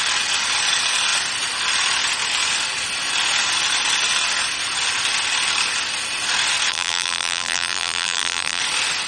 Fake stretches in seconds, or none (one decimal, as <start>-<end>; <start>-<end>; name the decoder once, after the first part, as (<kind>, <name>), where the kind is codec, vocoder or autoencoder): 6.7-8.6 (vocoder, BigVGAN v2)